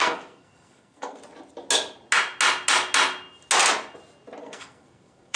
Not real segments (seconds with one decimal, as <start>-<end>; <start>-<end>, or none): 0.0-1.2; 4.4-5.4